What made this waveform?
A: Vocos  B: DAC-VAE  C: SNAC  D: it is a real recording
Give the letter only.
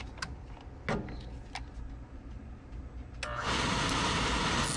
D